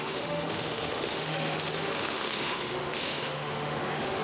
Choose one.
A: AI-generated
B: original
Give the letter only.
A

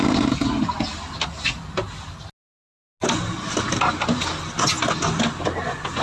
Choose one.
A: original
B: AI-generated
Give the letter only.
A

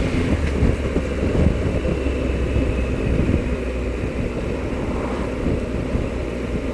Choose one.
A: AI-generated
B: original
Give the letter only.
A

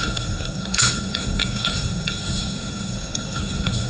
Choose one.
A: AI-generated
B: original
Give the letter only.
A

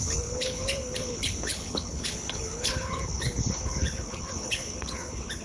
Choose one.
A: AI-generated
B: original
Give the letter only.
A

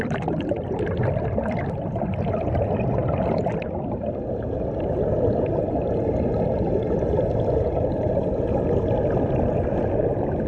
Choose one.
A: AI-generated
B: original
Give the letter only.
B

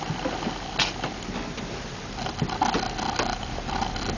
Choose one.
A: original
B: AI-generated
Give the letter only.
A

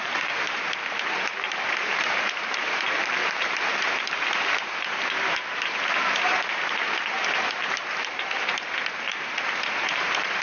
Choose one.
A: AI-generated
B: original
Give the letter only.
A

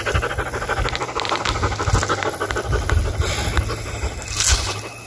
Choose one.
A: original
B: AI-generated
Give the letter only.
A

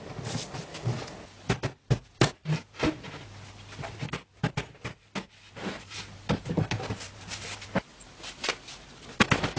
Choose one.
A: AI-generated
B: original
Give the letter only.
B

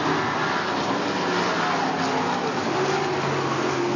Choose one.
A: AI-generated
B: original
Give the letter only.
B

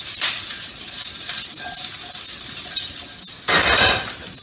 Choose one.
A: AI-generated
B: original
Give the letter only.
B